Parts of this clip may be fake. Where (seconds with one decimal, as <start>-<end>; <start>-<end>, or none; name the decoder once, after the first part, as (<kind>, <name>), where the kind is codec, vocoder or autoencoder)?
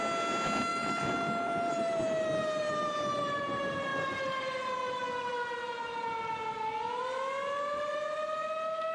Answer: 0.7-3.4 (vocoder, BigVGAN v2)